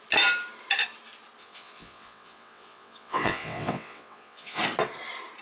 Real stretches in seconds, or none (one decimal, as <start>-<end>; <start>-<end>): 0.0-1.4; 4.6-5.4